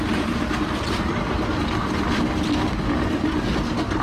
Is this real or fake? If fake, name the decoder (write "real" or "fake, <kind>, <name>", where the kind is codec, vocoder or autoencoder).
real